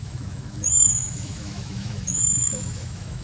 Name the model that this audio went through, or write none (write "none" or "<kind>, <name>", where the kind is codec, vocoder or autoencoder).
autoencoder, DAC-VAE